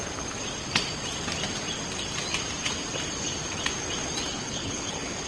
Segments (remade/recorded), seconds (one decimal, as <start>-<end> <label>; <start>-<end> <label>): 0.0-4.3 recorded; 4.3-5.3 remade